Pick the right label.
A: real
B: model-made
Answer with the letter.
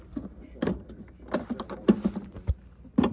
A